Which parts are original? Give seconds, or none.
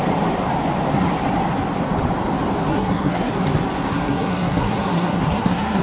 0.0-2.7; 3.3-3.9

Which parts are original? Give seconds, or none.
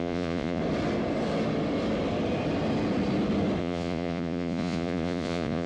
0.6-3.6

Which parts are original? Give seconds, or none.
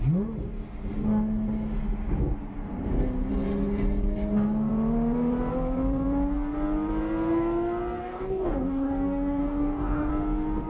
0.0-8.0; 10.1-10.7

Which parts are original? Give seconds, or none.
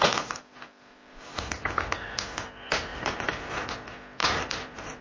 0.0-0.9; 1.4-2.9; 3.7-4.2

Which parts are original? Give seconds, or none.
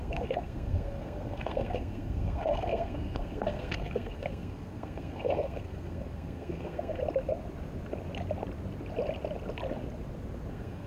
7.0-10.5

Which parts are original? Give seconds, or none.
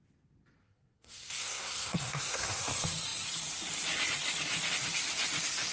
0.0-0.6; 2.6-5.7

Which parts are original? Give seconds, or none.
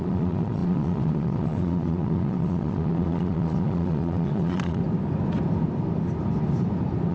4.8-7.1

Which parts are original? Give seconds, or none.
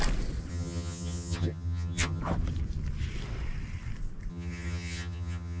0.0-0.5; 2.2-4.3